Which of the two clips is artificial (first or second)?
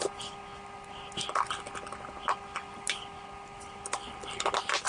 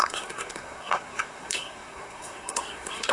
second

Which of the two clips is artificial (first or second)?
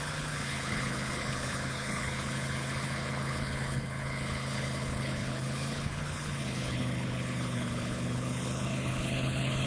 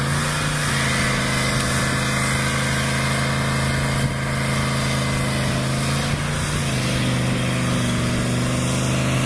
first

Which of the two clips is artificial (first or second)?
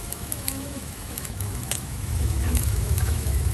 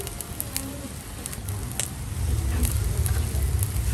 first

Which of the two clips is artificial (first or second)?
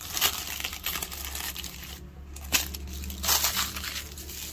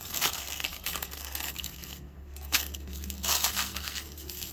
second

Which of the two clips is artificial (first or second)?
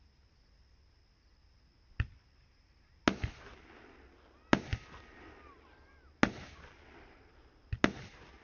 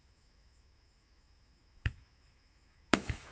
second